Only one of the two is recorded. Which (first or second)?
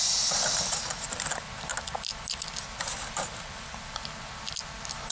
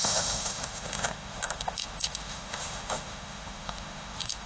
first